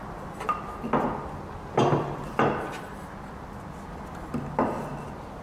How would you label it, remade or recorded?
recorded